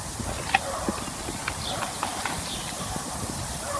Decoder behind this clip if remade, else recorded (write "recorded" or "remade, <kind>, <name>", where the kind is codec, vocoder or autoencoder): remade, vocoder, BigVGAN v2